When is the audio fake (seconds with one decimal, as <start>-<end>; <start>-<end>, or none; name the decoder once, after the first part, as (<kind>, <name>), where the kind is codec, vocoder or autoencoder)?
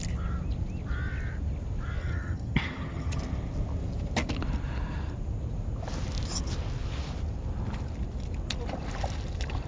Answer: 2.0-3.2 (vocoder, HiFi-GAN)